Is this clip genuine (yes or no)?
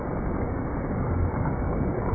no